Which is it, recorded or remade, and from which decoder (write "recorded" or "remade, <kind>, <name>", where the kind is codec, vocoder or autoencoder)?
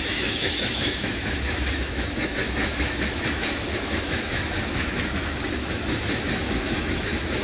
remade, autoencoder, DAC-VAE